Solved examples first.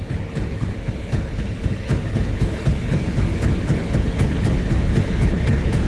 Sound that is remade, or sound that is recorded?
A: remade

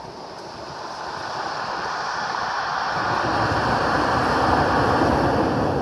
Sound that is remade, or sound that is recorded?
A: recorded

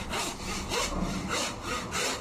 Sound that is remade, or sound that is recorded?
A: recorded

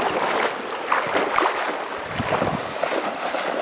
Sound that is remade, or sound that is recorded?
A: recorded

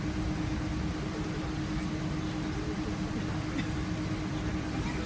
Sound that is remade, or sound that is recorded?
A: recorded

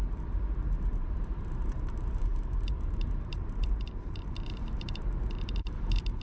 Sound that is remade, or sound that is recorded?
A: remade